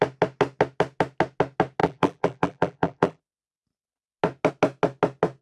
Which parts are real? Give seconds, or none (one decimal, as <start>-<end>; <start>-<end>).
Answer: 0.0-1.8; 3.2-5.4